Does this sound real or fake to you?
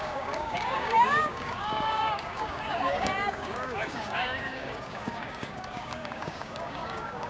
fake